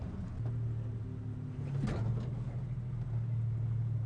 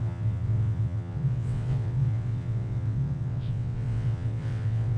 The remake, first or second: second